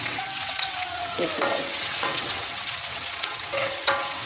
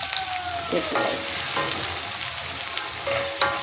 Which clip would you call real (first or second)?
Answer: second